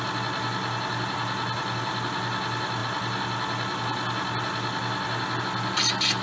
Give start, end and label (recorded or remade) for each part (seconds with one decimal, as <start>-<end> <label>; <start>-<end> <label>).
0.0-6.2 recorded